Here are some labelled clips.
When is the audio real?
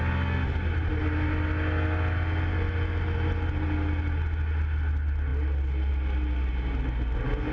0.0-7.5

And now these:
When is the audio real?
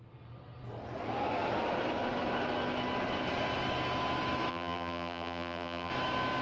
0.0-4.5; 5.9-6.4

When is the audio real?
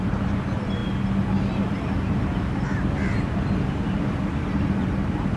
0.0-5.4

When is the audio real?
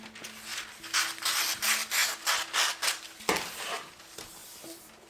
0.0-5.1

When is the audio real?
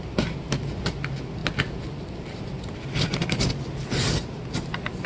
0.0-1.4; 3.5-5.1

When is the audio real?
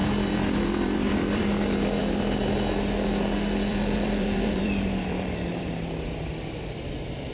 1.4-3.7; 6.3-7.3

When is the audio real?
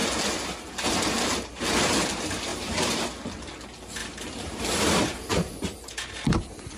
0.0-2.5; 3.0-4.0; 5.5-6.8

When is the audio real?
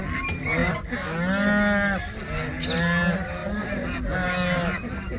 0.0-3.4; 4.0-5.2